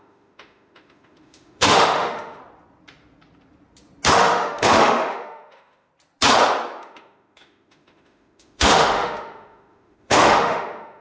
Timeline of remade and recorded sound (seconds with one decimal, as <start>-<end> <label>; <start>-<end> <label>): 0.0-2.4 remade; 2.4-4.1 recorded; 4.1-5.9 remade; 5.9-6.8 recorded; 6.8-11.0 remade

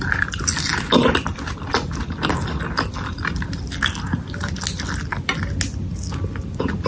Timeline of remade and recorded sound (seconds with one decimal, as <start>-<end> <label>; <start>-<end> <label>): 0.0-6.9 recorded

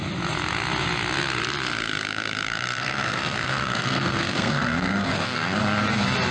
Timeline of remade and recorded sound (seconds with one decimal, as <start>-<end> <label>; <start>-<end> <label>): 0.0-1.8 recorded; 1.8-5.6 remade; 5.6-6.3 recorded

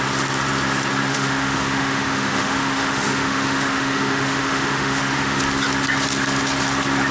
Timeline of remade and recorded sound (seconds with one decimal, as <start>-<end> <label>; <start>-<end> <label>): 0.0-1.1 recorded; 1.1-5.4 remade; 5.4-7.1 recorded

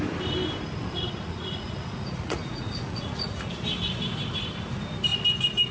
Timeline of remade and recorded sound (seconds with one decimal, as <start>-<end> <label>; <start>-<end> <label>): 0.0-0.8 recorded; 0.8-3.5 remade; 3.5-5.7 recorded